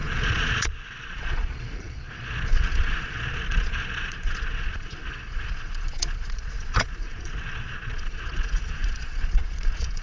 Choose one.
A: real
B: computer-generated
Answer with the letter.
B